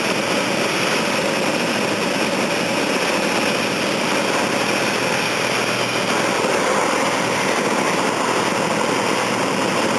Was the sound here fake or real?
real